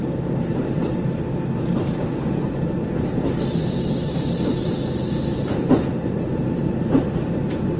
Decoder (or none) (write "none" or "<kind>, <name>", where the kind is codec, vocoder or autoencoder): vocoder, BigVGAN v2